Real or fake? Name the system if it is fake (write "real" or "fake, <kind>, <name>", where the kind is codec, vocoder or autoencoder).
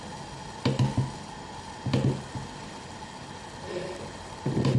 real